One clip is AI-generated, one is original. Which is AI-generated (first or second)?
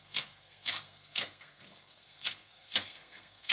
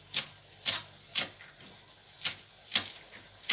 first